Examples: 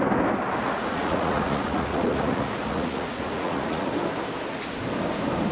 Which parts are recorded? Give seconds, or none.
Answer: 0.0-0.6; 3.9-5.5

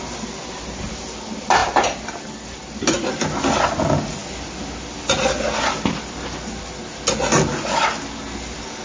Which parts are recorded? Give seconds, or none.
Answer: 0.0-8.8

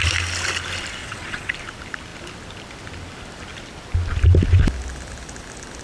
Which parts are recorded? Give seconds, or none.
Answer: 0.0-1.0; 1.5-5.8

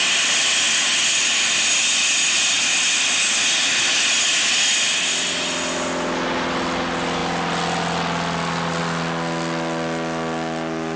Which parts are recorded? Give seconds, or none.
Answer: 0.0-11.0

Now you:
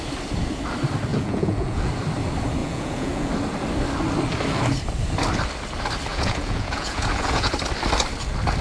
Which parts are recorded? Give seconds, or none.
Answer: 0.0-1.1; 1.9-2.6; 3.3-6.1; 7.5-8.6